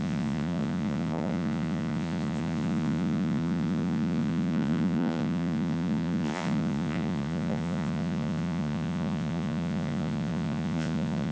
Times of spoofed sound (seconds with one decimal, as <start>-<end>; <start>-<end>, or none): 0.0-11.3